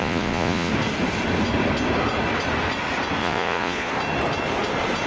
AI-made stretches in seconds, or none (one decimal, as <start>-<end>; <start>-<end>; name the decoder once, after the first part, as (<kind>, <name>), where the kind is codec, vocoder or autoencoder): 0.0-0.7 (vocoder, Vocos); 3.2-3.9